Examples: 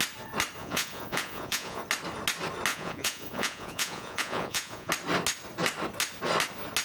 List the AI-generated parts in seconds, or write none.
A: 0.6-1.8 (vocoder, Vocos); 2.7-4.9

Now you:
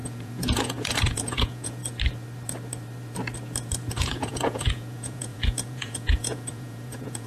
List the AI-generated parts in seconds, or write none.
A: 0.0-1.8 (vocoder, Vocos); 3.9-7.3